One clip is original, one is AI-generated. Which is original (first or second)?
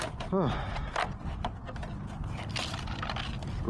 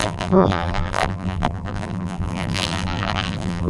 first